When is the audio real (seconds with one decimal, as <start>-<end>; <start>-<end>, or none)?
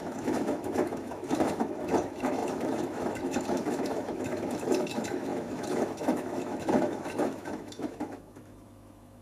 none